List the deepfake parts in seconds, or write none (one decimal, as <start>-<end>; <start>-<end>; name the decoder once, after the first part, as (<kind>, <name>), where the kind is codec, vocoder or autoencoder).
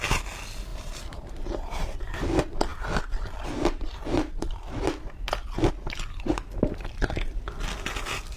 0.7-2.1 (vocoder, BigVGAN v2)